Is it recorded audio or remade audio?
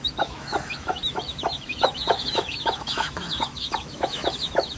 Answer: remade